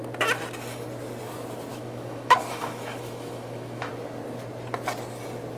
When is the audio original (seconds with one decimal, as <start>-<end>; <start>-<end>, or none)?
0.0-1.7; 3.9-5.6